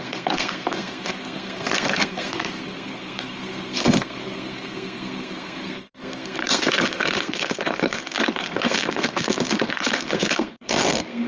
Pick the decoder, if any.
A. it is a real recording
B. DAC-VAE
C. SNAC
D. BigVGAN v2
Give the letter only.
C